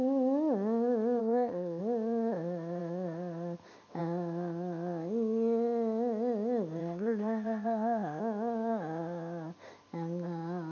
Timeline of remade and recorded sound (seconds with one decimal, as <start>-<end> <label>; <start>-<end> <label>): 0.0-1.2 recorded; 1.2-1.8 remade; 1.8-6.8 recorded; 6.8-8.2 remade; 8.2-10.7 recorded